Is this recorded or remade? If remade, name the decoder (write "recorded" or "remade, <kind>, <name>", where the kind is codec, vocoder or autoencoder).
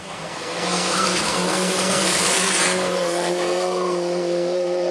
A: remade, codec, SNAC